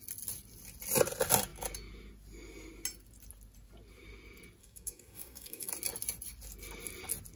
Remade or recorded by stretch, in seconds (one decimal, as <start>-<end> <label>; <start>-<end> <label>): 0.0-4.6 recorded; 4.6-5.7 remade; 5.7-7.4 recorded